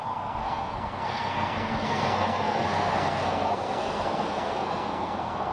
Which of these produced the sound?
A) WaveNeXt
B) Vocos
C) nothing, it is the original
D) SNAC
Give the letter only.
D